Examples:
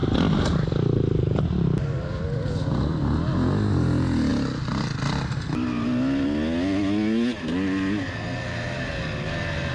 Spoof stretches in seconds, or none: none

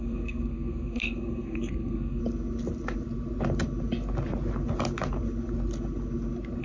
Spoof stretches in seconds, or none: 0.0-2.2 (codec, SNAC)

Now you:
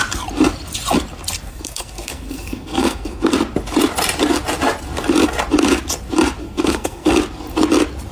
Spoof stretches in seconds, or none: 1.5-3.3 (codec, SNAC); 6.4-7.1

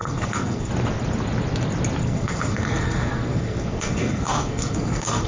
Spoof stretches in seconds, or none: 0.0-0.7 (codec, SNAC); 2.0-5.3

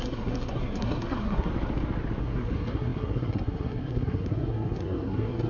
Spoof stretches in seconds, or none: 0.0-1.5 (codec, SNAC); 2.2-5.5